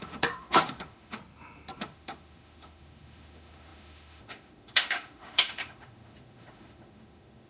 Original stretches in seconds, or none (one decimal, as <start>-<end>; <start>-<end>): 1.2-1.8